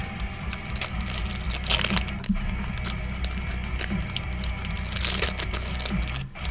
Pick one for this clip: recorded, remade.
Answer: recorded